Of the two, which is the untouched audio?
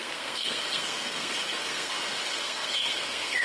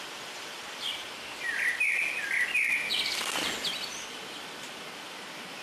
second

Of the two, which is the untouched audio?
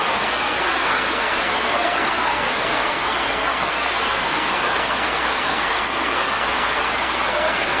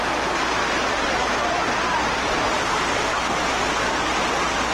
second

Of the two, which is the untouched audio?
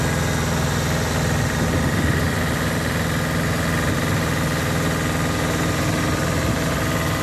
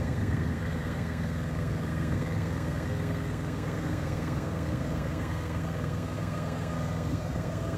first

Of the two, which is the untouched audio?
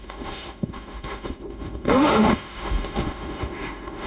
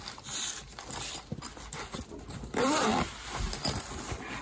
second